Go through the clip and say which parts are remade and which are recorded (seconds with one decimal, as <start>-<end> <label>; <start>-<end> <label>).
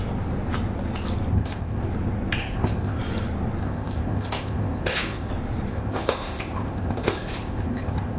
0.0-1.3 recorded; 1.3-1.8 remade; 1.8-2.4 recorded; 2.4-3.0 remade; 3.0-3.6 recorded; 3.6-5.3 remade; 5.3-5.7 recorded; 5.7-8.2 remade